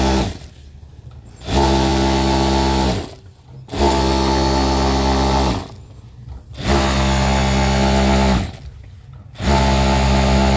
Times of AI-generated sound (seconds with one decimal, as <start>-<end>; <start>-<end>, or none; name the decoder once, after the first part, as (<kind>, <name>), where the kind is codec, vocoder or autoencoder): none

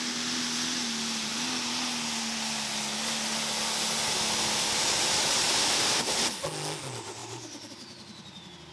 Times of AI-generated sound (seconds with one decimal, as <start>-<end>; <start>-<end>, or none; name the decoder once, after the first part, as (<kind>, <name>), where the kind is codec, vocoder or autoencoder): none